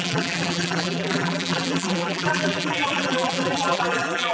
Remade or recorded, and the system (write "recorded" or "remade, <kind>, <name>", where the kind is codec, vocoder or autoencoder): remade, vocoder, BigVGAN v2